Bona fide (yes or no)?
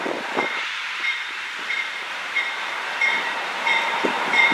no